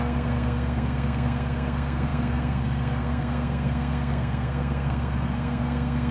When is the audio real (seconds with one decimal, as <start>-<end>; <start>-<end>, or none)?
none